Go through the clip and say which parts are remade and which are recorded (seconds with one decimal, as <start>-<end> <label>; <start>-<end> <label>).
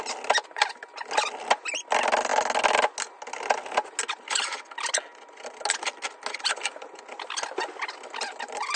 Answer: 0.0-8.8 recorded